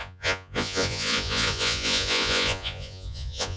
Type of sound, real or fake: fake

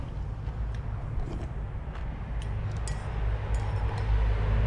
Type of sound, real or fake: real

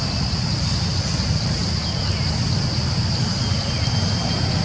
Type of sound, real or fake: real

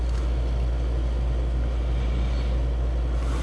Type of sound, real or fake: real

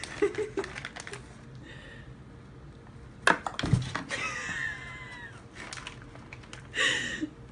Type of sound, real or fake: real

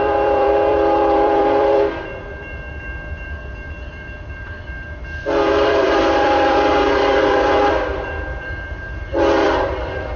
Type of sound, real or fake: fake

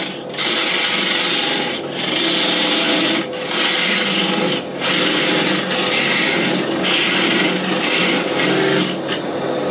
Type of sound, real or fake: real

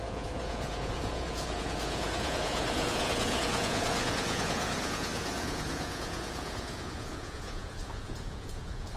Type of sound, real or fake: fake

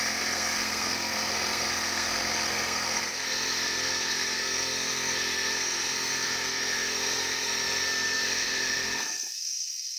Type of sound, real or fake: fake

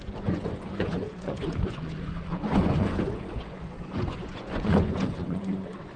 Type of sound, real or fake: fake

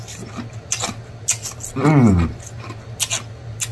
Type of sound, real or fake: real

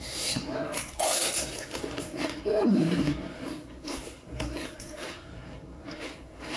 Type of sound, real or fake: fake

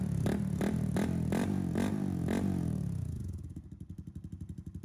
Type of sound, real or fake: fake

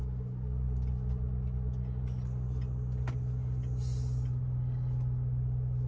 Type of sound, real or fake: real